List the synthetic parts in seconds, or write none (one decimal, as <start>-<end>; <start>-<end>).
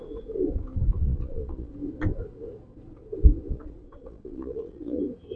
1.0-1.7; 3.5-5.0